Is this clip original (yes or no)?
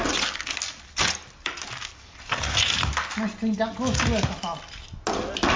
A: yes